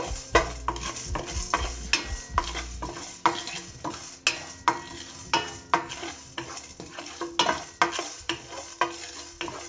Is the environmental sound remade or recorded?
recorded